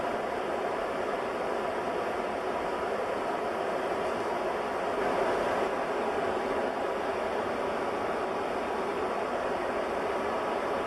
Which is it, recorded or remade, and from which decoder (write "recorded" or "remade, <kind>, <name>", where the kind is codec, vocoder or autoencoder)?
recorded